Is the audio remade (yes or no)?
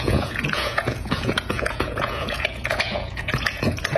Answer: yes